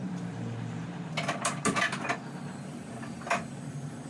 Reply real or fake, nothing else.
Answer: real